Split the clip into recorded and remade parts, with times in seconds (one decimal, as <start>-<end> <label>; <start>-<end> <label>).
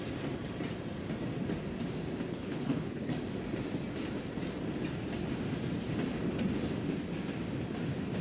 0.0-2.3 recorded; 2.3-3.1 remade; 3.1-8.2 recorded